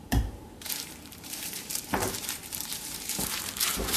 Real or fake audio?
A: fake